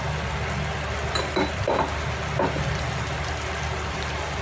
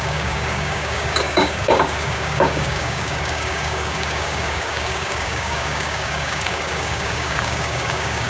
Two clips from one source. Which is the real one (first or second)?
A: first